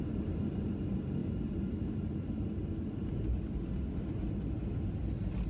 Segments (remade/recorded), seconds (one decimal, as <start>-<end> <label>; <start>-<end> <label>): 0.0-5.5 recorded